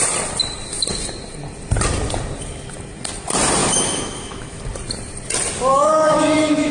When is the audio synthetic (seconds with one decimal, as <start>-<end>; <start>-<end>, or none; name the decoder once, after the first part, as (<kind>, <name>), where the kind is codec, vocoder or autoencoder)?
3.6-4.6 (autoencoder, DAC-VAE); 5.7-6.7